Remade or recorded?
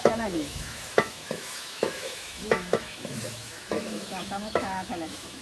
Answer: remade